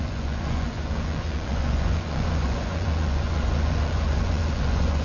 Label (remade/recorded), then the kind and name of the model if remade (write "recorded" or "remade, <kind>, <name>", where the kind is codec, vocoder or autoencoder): remade, vocoder, Vocos